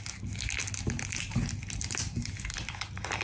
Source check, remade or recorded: recorded